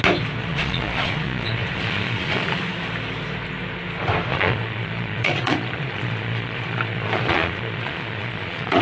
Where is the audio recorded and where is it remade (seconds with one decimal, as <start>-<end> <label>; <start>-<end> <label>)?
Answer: 0.0-0.4 recorded; 0.4-2.6 remade; 2.6-4.3 recorded; 4.3-8.8 remade